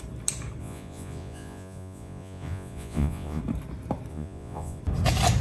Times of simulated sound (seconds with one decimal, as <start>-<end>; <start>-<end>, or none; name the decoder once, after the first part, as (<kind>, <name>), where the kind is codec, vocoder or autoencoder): 0.6-3.4 (vocoder, Vocos); 4.1-4.8